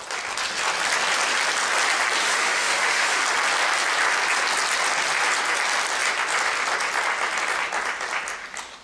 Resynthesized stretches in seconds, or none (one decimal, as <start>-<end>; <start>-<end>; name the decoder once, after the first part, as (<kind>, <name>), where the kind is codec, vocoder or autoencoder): 2.2-3.2 (autoencoder, DAC-VAE)